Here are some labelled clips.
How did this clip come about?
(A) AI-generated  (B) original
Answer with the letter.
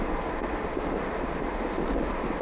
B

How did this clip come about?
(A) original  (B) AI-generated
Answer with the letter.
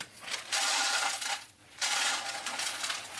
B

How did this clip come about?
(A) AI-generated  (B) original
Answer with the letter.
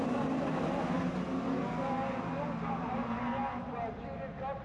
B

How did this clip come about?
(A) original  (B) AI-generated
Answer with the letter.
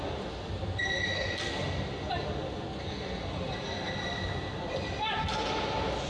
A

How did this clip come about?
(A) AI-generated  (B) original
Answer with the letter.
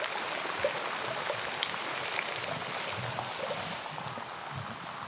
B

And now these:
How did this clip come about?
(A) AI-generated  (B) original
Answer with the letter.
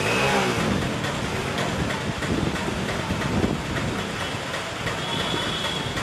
B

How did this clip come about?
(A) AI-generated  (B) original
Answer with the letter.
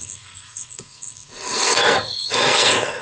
A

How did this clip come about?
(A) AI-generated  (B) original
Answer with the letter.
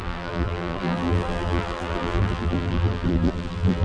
A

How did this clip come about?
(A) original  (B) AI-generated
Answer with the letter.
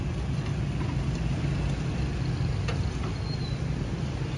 A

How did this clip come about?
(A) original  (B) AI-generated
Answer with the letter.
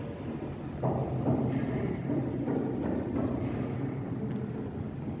A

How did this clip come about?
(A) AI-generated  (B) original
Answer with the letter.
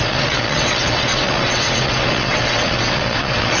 A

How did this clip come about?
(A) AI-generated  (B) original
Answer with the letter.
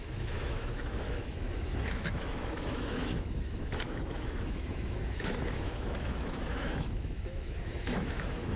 A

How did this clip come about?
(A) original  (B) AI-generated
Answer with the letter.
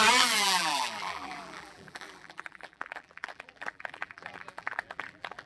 B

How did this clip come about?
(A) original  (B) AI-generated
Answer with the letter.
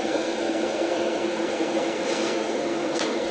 B